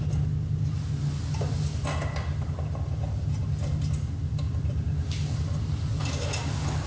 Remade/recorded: recorded